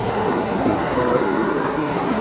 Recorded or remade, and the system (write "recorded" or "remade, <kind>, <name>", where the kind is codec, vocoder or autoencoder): remade, codec, SNAC